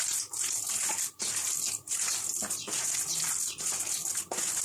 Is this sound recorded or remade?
recorded